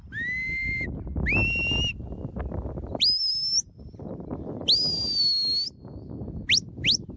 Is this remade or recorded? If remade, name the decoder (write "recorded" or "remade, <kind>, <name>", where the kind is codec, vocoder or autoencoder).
recorded